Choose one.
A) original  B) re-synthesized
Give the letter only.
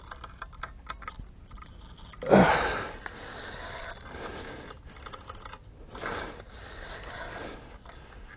A